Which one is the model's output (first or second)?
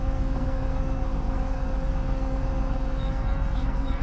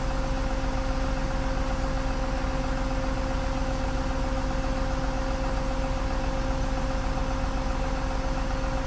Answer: first